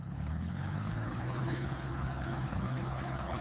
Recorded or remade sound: remade